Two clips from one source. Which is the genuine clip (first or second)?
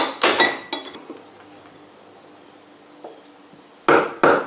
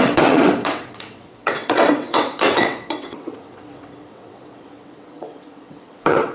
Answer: first